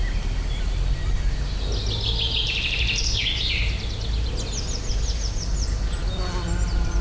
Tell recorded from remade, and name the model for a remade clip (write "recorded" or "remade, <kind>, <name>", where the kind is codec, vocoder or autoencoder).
recorded